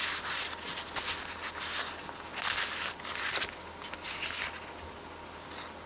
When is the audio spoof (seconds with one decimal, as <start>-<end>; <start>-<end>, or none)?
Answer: none